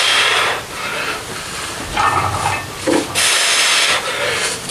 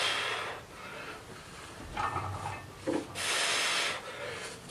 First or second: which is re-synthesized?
first